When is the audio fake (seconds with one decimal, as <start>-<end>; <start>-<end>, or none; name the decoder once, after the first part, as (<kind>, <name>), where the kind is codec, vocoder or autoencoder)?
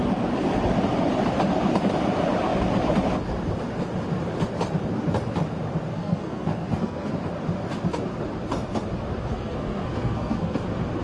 5.9-7.1 (codec, SNAC); 9.3-10.6